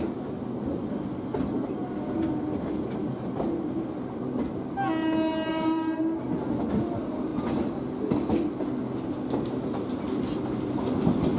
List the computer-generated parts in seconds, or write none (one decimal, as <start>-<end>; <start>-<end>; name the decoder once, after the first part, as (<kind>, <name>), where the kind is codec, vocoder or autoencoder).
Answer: 5.5-6.0 (vocoder, BigVGAN v2)